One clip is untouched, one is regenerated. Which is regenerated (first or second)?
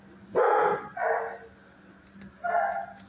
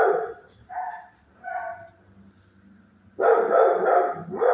second